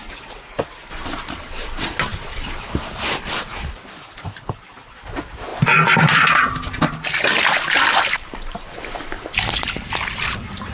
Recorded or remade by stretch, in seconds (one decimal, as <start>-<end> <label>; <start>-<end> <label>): 0.0-10.7 recorded